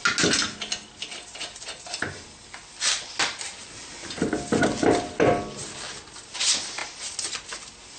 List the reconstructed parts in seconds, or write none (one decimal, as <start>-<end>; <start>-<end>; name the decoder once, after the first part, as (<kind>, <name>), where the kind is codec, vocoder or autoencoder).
none